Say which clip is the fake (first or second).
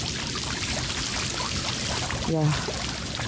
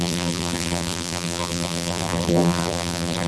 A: second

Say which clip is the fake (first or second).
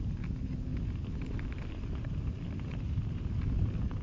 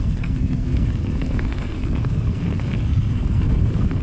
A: second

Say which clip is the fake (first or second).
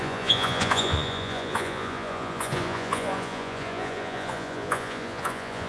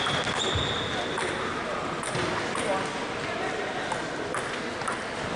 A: first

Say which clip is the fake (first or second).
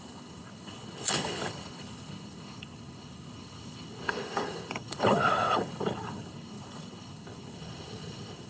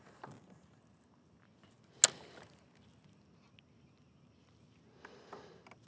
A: first